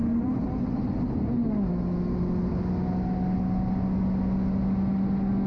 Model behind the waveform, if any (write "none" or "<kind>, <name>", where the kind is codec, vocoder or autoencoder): none